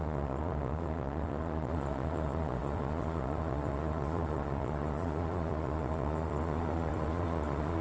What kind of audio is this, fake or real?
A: fake